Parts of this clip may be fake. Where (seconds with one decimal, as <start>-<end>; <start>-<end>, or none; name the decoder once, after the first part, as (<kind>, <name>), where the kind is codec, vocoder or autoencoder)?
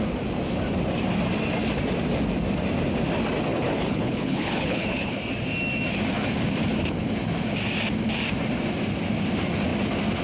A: 3.5-5.2 (codec, HILCodec)